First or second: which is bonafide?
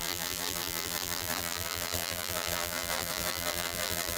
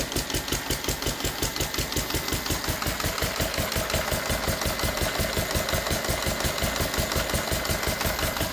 second